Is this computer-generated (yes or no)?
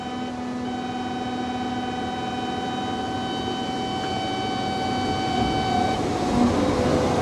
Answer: no